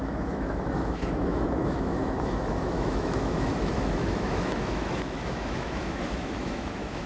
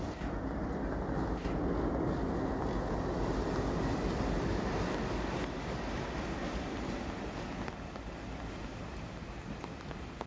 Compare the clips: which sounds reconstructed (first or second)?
first